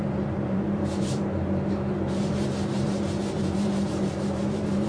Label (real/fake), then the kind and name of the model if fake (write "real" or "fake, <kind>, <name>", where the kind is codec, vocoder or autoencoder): fake, vocoder, BigVGAN v2